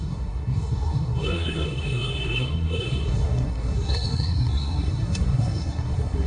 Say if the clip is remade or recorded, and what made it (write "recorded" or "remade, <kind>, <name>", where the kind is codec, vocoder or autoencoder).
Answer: remade, codec, SNAC